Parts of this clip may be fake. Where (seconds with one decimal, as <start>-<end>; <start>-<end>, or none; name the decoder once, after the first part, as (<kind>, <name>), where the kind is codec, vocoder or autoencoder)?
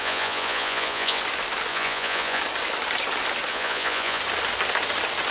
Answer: 0.0-1.2 (vocoder, Vocos); 1.7-2.4; 3.5-4.2